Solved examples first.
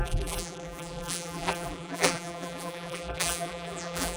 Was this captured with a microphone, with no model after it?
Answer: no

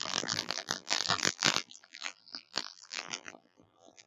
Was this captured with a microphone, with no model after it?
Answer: no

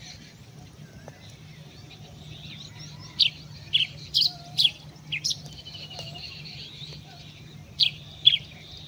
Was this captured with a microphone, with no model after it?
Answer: no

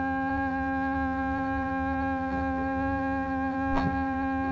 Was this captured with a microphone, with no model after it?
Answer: no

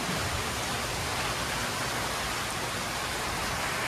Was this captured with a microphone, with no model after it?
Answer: yes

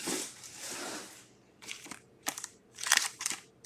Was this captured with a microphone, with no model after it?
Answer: no